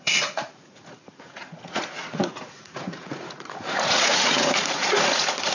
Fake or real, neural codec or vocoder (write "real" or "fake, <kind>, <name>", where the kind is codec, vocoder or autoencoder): fake, vocoder, Vocos